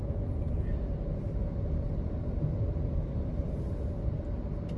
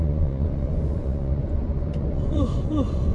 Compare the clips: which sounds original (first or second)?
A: first